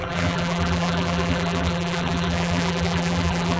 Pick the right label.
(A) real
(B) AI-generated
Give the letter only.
B